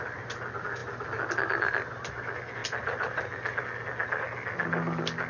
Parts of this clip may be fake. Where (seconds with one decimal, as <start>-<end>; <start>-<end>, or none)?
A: none